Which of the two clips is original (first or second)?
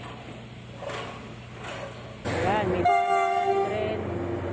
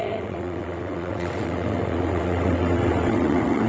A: first